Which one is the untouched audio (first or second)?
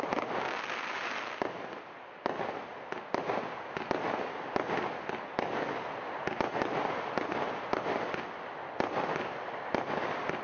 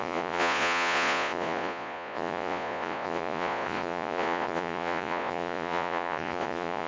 first